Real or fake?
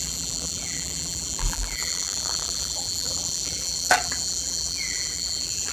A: fake